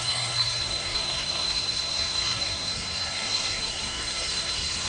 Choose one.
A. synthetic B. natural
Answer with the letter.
A